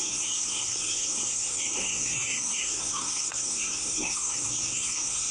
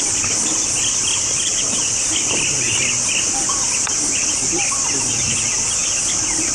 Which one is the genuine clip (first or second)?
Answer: second